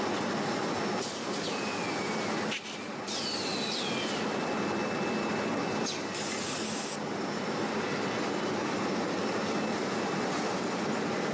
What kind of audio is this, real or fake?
real